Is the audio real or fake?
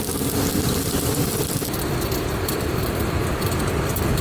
real